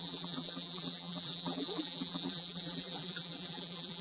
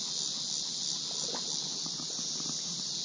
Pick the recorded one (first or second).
second